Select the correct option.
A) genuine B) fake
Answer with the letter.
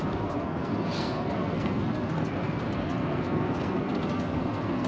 B